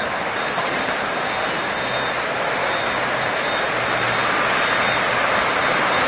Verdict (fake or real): real